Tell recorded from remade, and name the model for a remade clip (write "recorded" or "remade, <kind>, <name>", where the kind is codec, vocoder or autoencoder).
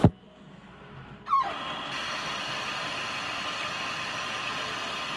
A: recorded